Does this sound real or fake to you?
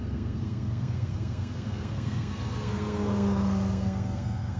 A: fake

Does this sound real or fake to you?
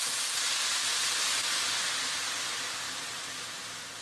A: real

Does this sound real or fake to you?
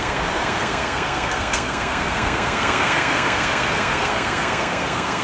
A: fake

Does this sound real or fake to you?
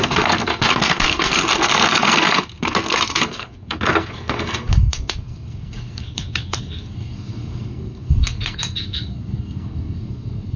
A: fake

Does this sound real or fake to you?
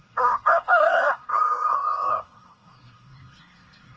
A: fake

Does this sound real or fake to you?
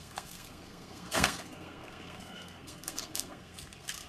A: fake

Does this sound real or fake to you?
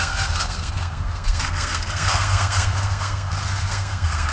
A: fake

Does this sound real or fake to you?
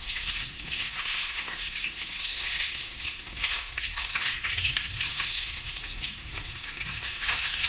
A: fake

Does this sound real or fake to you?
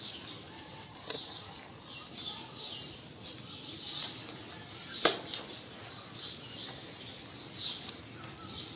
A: real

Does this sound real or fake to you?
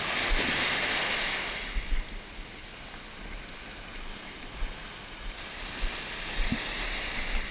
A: real